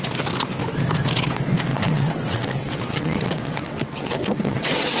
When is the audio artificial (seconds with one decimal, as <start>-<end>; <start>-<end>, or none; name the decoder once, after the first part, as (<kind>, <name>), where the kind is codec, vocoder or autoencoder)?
1.7-5.0 (vocoder, WaveNeXt)